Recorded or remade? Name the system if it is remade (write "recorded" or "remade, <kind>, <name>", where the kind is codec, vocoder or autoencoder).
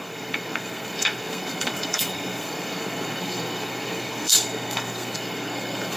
remade, codec, SNAC